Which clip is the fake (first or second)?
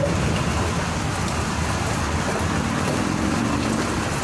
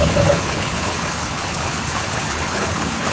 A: second